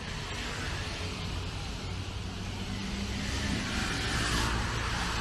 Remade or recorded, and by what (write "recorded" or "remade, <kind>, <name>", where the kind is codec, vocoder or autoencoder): recorded